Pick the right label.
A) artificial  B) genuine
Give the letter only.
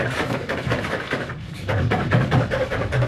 A